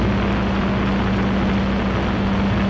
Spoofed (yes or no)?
no